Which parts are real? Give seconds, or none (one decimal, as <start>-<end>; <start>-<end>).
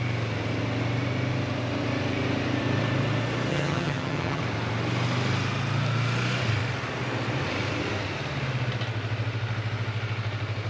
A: 0.0-3.5; 4.4-10.7